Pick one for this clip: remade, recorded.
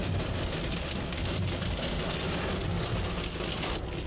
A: recorded